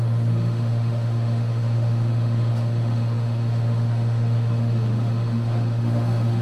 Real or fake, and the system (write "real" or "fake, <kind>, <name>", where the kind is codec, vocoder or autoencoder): fake, autoencoder, DAC-VAE